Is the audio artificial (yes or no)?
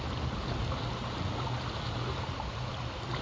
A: no